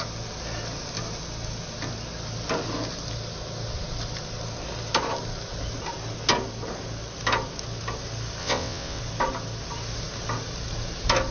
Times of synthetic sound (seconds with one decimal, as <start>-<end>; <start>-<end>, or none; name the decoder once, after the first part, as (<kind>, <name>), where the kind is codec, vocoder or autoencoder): 8.4-9.0 (vocoder, WaveNeXt)